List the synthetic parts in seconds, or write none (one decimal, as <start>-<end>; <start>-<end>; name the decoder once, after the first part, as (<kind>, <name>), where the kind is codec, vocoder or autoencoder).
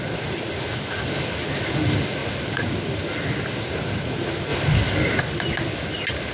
none